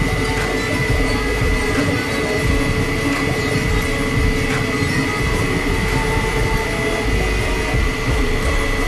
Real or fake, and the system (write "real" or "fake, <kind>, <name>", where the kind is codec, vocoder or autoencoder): real